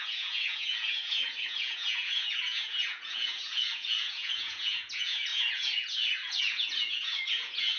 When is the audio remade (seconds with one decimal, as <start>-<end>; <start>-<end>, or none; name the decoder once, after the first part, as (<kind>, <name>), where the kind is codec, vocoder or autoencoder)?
0.0-7.8 (vocoder, Vocos)